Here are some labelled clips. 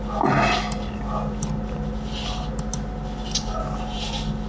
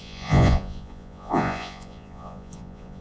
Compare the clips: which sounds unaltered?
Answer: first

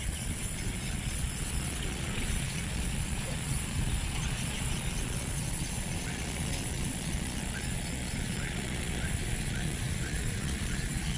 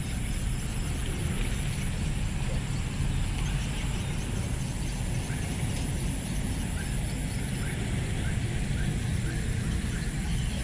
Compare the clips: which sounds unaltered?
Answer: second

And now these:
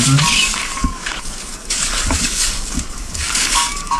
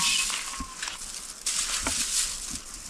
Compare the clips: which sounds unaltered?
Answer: second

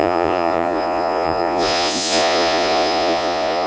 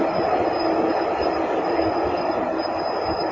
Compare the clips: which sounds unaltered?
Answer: second